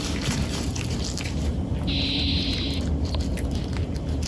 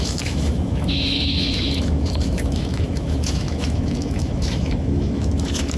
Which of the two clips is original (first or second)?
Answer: first